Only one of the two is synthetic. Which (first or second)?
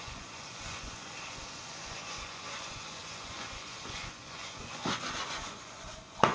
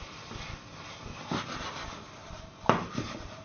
first